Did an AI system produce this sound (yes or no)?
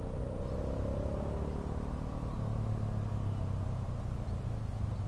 no